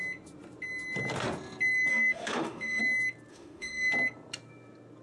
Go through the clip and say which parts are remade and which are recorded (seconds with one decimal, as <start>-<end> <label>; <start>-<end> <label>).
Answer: 0.0-1.9 recorded; 1.9-2.8 remade; 2.8-3.3 recorded; 3.3-3.9 remade; 3.9-5.0 recorded